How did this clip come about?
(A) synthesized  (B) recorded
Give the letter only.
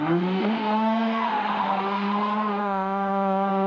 A